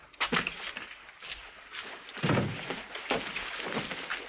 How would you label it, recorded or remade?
recorded